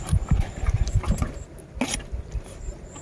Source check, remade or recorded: recorded